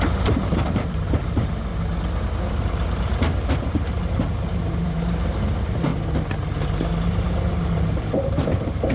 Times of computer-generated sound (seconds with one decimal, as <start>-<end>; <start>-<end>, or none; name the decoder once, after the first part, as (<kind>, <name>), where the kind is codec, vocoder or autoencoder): 0.0-1.7 (vocoder, BigVGAN v2); 2.5-5.9; 7.0-8.9